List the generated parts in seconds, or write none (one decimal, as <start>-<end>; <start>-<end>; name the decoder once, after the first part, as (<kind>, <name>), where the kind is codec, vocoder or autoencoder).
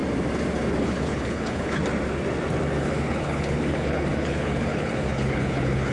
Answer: 0.8-1.8 (codec, HILCodec); 2.8-5.9